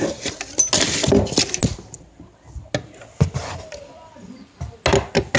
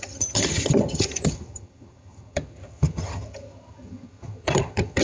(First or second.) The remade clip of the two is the second